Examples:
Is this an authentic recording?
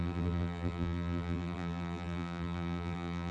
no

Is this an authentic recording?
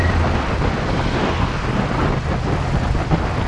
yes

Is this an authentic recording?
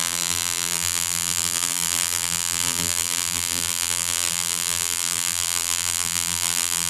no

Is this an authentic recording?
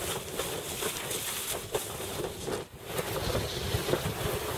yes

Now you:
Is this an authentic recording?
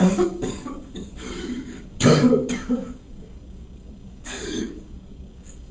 no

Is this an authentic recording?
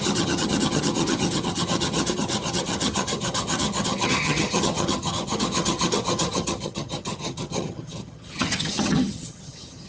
no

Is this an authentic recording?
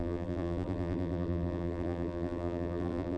no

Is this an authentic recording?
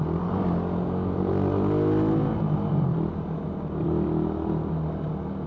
yes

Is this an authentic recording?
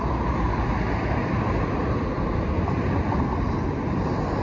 yes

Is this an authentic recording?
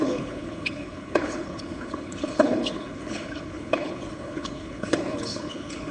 no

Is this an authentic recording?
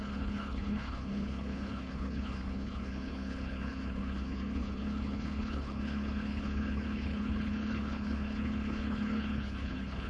no